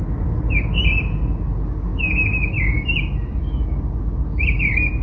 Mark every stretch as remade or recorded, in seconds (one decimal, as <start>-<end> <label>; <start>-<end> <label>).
0.0-5.0 recorded